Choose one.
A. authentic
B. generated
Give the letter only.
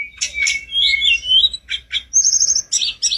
A